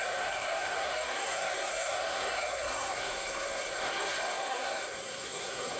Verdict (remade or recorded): remade